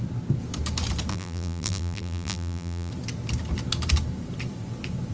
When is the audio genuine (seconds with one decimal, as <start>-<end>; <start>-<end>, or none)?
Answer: 0.0-1.1; 2.9-5.1